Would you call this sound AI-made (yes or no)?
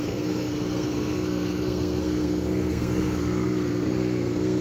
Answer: yes